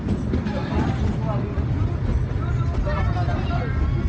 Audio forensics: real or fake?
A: real